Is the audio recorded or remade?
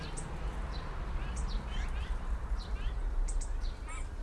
remade